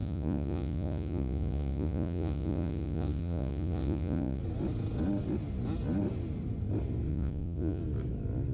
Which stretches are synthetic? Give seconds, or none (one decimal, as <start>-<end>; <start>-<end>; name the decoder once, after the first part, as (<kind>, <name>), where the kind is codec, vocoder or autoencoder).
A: 0.0-4.4 (vocoder, Vocos); 7.1-7.8